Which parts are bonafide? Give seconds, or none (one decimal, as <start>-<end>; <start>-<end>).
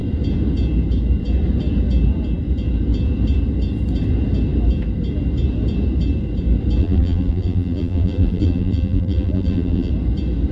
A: 0.0-6.8; 9.9-10.5